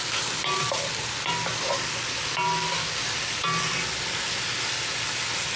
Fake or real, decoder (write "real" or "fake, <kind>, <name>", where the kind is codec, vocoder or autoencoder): real